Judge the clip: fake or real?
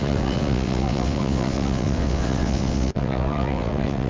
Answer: fake